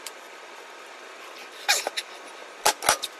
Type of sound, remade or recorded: recorded